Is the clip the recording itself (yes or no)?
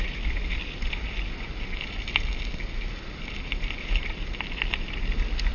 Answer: yes